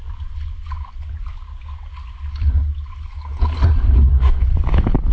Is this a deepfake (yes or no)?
no